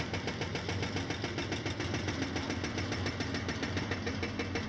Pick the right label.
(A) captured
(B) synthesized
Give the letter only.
A